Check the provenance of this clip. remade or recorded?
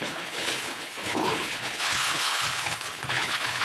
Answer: remade